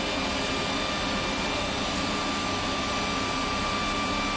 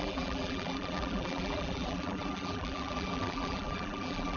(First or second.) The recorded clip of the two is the first